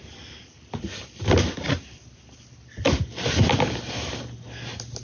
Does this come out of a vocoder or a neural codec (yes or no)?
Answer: no